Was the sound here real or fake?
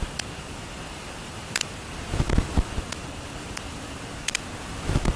fake